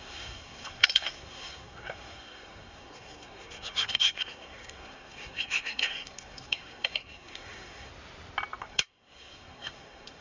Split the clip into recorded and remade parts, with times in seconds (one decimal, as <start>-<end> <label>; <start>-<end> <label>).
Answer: 0.0-7.9 remade; 7.9-8.6 recorded; 8.6-10.2 remade

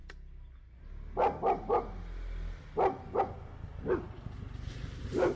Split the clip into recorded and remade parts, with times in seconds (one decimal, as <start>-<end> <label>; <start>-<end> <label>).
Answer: 0.0-5.4 recorded